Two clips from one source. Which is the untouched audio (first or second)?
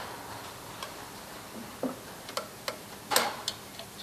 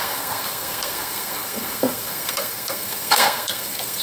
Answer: first